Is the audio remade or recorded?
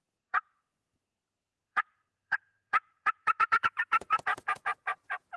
remade